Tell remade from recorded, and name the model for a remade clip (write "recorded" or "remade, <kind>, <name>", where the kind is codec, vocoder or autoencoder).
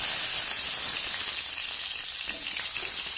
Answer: recorded